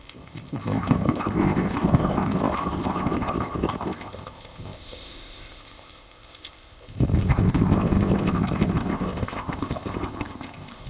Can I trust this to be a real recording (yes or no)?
no